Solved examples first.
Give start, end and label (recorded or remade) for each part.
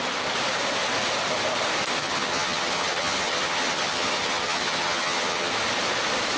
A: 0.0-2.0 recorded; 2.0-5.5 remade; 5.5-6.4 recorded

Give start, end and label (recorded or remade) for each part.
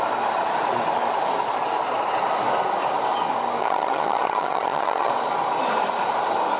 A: 0.0-3.6 recorded; 3.6-5.1 remade; 5.1-6.6 recorded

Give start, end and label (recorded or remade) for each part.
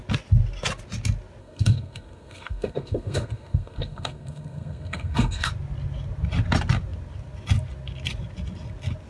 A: 0.0-1.4 recorded; 1.4-5.5 remade; 5.5-9.1 recorded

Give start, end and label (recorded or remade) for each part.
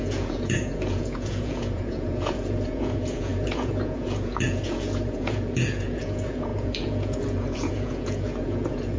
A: 0.0-9.0 remade